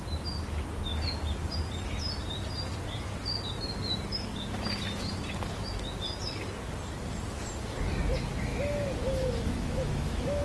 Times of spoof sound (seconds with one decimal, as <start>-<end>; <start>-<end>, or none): 8.5-10.4